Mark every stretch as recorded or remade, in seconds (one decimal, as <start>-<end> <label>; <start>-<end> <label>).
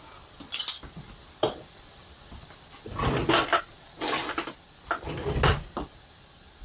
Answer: 0.0-6.6 recorded